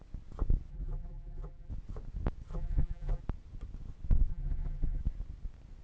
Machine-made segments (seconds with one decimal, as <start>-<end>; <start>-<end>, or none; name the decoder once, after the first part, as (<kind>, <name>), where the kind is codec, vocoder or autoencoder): 0.7-1.7 (vocoder, BigVGAN v2); 2.5-3.2; 4.3-5.0